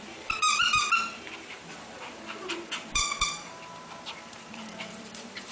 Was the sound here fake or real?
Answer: fake